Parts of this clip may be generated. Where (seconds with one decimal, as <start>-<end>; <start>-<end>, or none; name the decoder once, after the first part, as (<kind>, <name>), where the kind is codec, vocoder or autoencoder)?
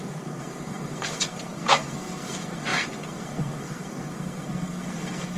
0.0-5.4 (codec, SNAC)